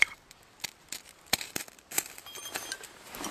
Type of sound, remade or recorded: recorded